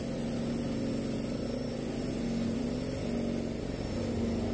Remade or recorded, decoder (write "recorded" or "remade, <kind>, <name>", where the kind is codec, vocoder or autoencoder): recorded